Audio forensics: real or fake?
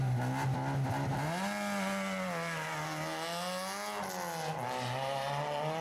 real